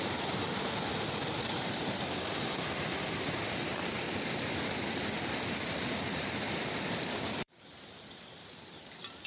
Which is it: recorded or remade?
remade